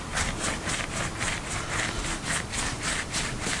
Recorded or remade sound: remade